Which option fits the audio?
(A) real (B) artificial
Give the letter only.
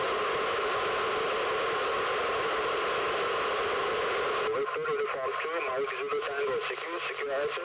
A